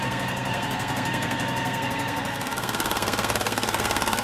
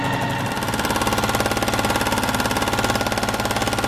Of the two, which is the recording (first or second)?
second